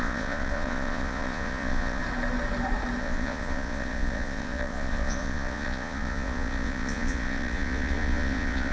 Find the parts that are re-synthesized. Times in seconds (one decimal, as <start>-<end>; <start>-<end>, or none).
0.0-2.0; 3.0-8.7